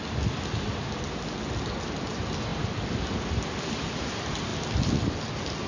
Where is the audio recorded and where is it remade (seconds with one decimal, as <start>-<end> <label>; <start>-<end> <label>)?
0.0-5.7 recorded